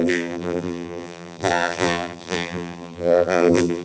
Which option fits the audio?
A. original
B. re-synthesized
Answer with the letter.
B